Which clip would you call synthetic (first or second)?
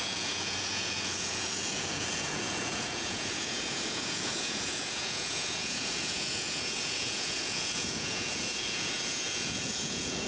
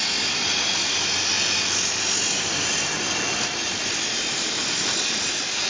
first